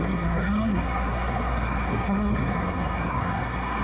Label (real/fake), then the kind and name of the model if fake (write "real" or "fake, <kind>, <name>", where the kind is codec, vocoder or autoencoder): fake, codec, SNAC